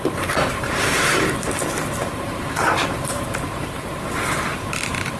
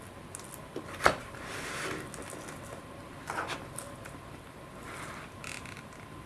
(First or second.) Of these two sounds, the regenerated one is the first